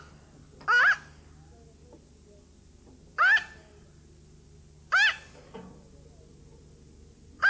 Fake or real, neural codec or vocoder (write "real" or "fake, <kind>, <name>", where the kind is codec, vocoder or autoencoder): real